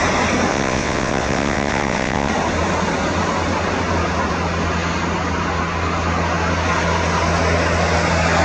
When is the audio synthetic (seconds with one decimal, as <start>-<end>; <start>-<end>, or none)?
0.5-2.3